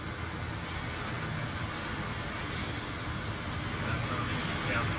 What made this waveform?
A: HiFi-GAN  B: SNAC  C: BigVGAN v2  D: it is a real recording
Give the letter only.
D